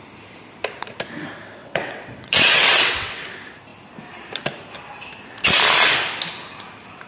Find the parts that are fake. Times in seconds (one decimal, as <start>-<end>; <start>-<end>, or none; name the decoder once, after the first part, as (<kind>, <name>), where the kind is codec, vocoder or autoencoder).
1.6-3.3 (vocoder, WaveNeXt)